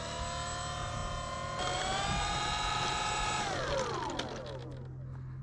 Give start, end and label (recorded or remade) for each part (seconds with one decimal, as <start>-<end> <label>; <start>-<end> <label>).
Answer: 0.0-5.4 recorded